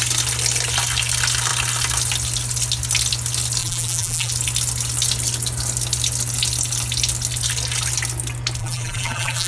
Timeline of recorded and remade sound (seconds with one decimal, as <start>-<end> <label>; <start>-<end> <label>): 0.0-3.6 recorded; 3.6-4.3 remade; 4.3-8.6 recorded; 8.6-9.5 remade